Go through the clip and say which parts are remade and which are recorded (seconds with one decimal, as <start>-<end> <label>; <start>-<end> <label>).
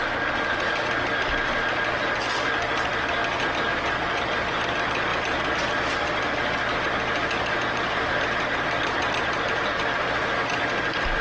0.0-11.2 recorded